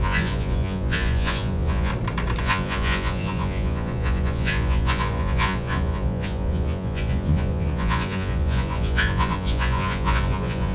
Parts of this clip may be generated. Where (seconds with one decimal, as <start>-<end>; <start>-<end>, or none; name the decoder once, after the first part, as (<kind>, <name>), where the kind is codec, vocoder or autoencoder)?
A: 0.0-1.9 (vocoder, Vocos); 2.4-10.7